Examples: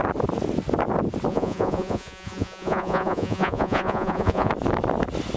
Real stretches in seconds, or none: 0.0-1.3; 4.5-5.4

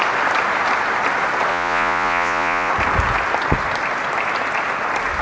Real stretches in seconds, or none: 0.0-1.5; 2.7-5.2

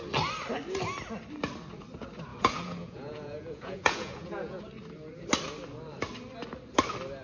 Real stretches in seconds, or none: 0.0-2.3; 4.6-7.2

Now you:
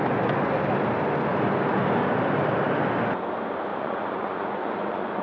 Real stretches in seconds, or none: 0.0-3.7

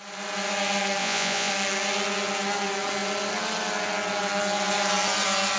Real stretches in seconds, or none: 0.0-1.0; 1.5-5.6

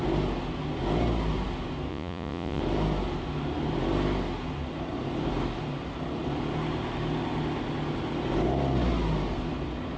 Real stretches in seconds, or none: 0.0-1.9; 2.6-10.0

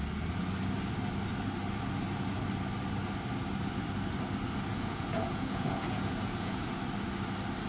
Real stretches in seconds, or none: 0.0-4.7; 6.7-7.7

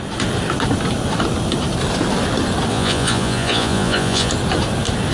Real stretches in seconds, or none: 0.0-2.7; 4.3-5.1